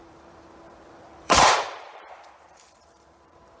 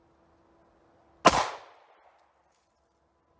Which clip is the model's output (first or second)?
first